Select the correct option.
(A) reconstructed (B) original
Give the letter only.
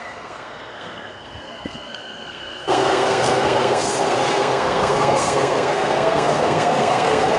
A